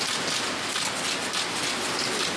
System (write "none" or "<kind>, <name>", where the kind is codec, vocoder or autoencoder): none